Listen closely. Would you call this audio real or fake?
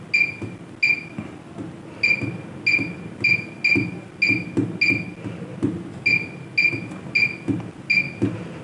real